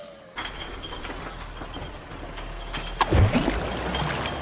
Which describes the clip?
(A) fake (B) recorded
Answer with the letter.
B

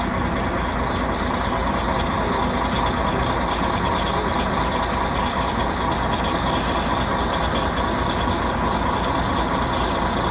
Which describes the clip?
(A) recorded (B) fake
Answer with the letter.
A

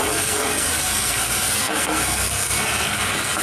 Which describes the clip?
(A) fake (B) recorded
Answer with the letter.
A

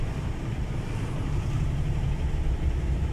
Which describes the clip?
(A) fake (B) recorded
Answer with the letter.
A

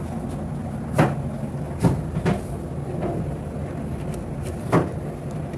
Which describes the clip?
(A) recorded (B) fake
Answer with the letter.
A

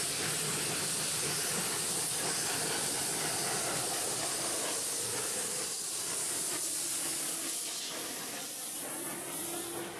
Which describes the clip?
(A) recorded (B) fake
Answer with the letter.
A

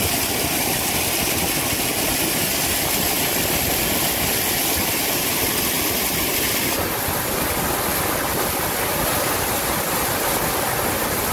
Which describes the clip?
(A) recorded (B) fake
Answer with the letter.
A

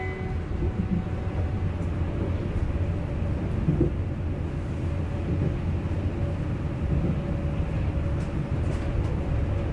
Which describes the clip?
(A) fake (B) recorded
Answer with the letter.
B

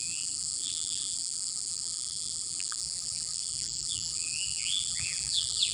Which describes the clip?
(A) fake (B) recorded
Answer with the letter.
A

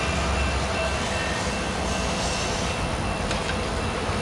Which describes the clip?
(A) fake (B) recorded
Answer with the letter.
B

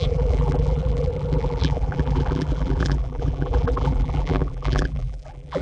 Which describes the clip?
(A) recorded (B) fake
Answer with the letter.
B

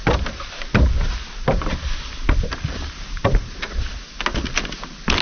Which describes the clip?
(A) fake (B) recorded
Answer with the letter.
B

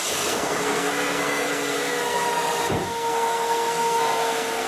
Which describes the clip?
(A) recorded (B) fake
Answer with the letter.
B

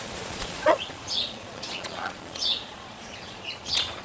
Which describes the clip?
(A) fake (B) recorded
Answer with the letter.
A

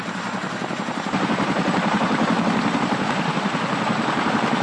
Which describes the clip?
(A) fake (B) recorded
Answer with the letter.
A